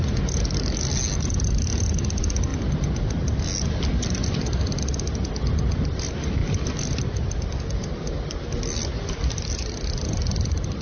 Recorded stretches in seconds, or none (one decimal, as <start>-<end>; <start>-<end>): 0.0-10.8